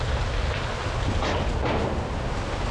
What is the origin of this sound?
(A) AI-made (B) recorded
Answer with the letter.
B